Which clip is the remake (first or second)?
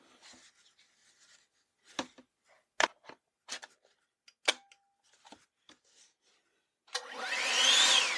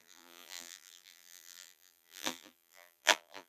second